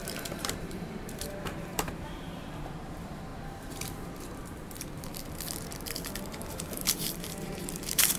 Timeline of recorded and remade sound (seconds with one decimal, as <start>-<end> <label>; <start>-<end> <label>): 0.0-5.1 remade; 5.1-6.3 recorded; 6.3-8.2 remade